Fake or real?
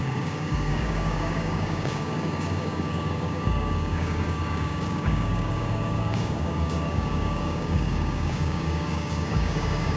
fake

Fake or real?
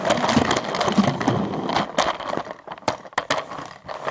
real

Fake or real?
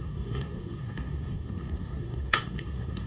fake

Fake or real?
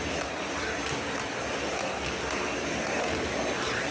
real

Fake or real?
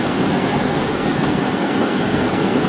fake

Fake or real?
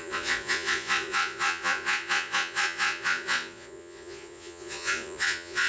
fake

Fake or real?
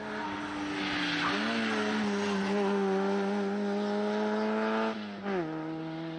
real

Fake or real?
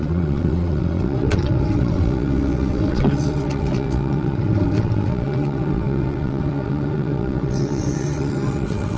fake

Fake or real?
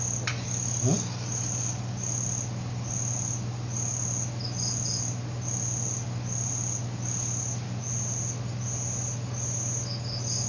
real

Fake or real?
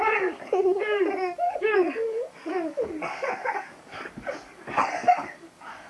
fake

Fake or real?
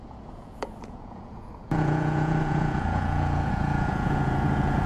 fake